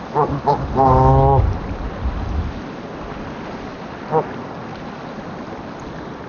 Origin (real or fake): real